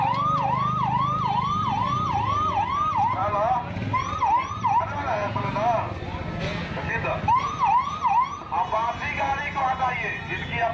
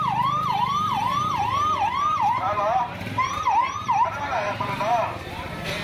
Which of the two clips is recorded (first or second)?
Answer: first